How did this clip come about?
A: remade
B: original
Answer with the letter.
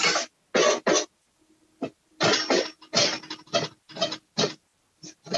B